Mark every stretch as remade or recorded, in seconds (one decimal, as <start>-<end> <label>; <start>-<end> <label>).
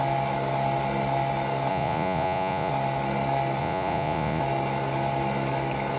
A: 0.0-1.7 recorded; 1.7-2.7 remade; 2.7-3.6 recorded; 3.6-4.4 remade; 4.4-6.0 recorded